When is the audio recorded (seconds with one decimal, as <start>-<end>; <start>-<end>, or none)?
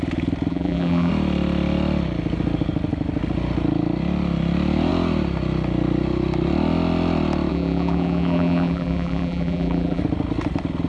0.0-0.5; 1.1-7.5; 10.0-10.9